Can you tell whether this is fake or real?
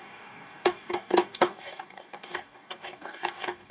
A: fake